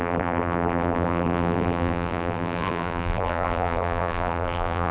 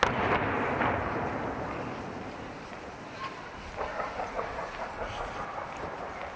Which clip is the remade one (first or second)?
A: first